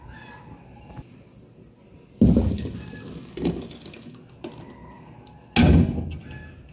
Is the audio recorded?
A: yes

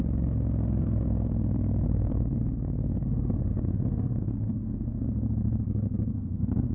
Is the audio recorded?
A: no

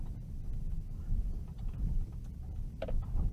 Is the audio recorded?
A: no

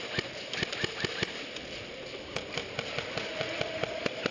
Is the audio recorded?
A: yes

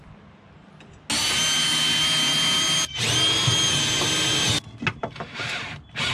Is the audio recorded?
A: yes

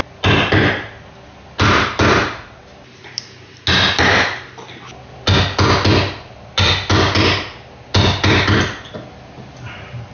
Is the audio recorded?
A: yes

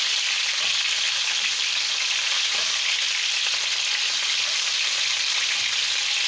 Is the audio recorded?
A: yes